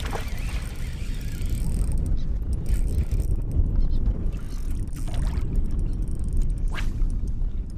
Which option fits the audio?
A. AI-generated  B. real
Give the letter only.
B